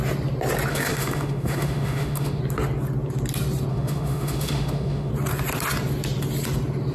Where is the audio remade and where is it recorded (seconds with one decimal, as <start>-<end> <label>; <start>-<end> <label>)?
0.0-0.7 recorded; 0.7-2.4 remade; 2.4-3.7 recorded; 3.7-5.1 remade; 5.1-6.9 recorded